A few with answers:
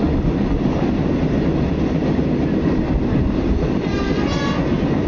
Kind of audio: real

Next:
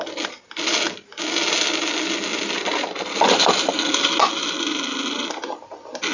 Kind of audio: real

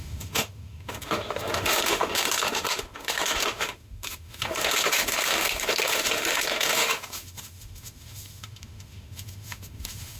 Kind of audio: fake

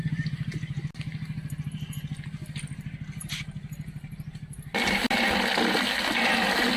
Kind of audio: real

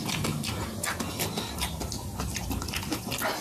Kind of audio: real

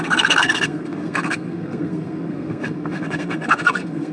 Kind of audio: fake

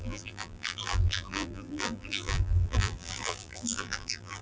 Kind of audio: fake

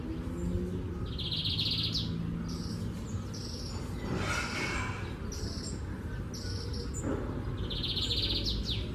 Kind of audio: real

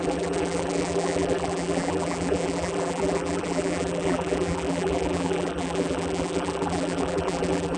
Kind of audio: fake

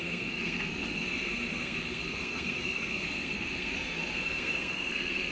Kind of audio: fake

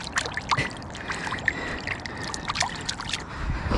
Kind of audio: real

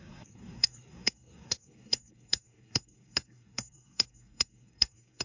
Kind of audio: fake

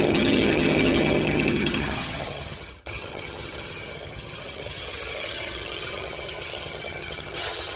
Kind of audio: fake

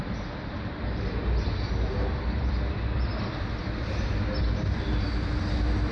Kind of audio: real